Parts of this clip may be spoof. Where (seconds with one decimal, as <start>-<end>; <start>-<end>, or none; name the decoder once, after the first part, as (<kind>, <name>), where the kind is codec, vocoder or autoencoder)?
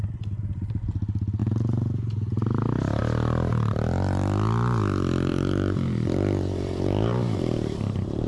1.4-3.0 (vocoder, BigVGAN v2); 5.3-8.3